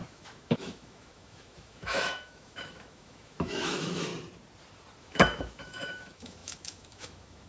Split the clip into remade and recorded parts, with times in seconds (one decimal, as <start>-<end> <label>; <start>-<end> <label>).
0.0-4.1 remade; 4.1-5.0 recorded; 5.0-7.5 remade